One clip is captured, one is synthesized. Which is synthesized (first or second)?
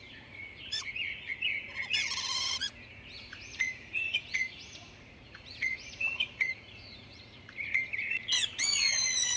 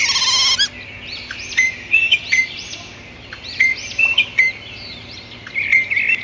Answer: first